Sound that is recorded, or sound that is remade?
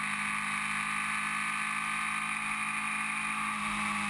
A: recorded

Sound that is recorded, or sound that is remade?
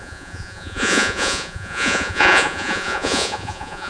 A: remade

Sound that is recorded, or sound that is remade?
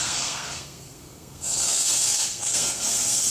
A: remade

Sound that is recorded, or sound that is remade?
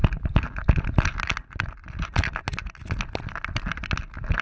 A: recorded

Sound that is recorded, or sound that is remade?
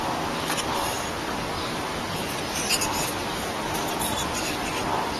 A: recorded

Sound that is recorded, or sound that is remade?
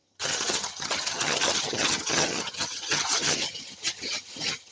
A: remade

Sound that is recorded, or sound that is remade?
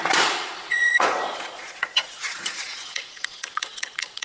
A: remade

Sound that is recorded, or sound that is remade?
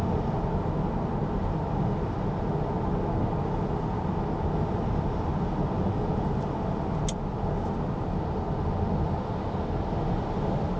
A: recorded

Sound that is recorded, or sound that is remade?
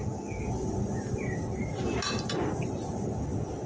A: recorded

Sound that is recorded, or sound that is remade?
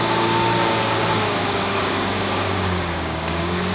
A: remade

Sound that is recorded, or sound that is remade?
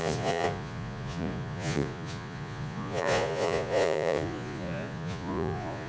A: remade